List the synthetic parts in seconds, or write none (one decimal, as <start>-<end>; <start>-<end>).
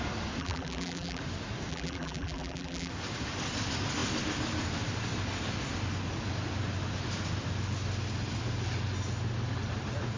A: 0.4-1.2; 1.7-2.9